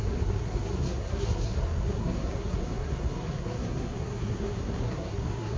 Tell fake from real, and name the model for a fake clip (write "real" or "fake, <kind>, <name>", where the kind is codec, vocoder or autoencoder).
fake, codec, SNAC